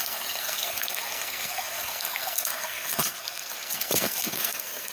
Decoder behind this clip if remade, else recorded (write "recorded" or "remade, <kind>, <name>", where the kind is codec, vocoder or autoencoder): remade, codec, SNAC